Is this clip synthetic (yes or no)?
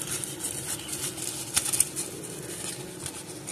no